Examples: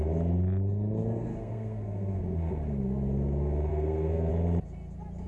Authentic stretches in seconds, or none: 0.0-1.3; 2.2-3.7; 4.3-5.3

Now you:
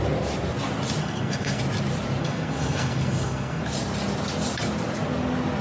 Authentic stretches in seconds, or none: 0.0-1.0; 1.6-2.2; 3.6-5.6

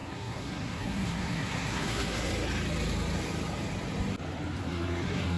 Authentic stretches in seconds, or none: 2.3-4.6

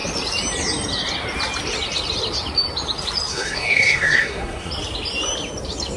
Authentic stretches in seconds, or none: 0.0-3.3; 4.7-6.0